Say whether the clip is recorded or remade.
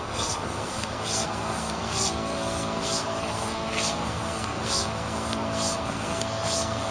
remade